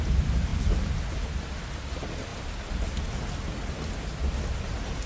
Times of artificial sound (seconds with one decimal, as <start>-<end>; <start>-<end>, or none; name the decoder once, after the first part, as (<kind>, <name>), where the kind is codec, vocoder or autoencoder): none